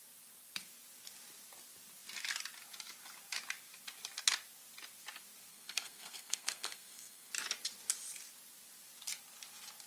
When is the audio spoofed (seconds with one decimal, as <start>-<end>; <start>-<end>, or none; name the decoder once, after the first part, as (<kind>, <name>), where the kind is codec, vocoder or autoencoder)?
5.5-7.3 (codec, SNAC)